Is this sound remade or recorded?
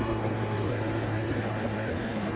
remade